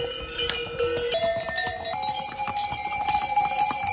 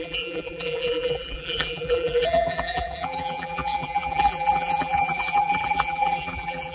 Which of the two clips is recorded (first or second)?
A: first